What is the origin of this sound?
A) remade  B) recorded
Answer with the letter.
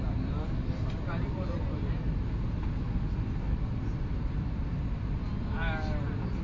B